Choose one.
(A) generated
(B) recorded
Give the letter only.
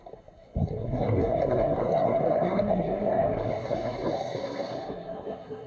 A